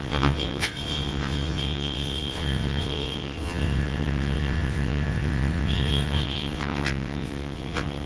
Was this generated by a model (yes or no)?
yes